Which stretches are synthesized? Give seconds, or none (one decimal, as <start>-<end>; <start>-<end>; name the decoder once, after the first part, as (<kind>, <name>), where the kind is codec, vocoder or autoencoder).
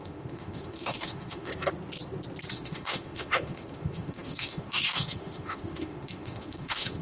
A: 0.0-1.5 (autoencoder, DAC-VAE); 2.5-7.0